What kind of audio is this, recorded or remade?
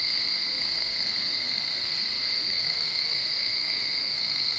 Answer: remade